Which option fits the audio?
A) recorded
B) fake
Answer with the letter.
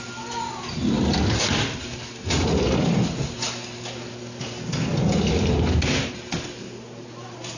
A